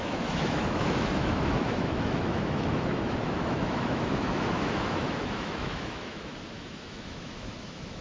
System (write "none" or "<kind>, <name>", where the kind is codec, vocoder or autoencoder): autoencoder, DAC-VAE